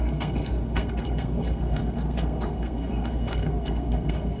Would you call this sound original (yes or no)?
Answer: no